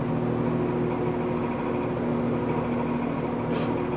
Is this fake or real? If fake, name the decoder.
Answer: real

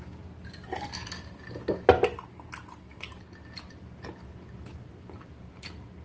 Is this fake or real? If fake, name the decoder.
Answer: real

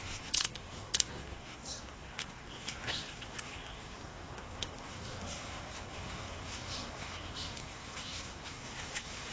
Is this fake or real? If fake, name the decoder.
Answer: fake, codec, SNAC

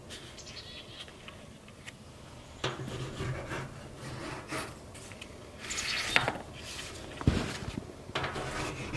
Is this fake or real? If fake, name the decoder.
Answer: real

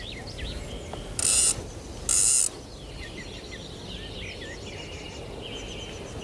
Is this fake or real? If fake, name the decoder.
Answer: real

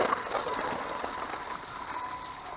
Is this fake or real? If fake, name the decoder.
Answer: real